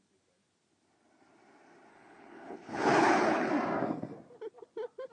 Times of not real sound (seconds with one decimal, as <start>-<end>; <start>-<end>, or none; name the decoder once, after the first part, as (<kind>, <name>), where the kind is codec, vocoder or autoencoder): 1.9-3.5 (codec, HILCodec)